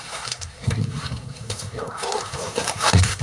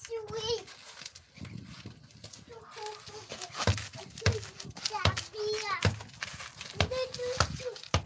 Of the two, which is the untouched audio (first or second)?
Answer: second